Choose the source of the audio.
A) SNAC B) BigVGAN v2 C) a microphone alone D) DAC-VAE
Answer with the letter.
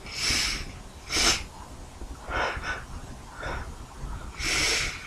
C